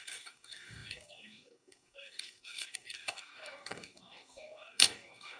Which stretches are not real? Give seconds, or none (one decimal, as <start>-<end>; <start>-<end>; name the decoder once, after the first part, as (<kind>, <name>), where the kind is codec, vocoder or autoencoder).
0.0-5.4 (codec, DAC)